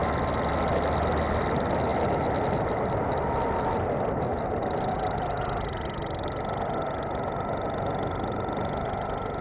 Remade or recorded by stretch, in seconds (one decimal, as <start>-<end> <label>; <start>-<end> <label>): 0.0-9.4 recorded